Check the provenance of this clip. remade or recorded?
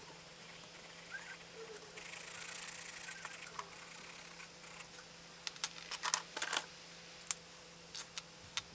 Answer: recorded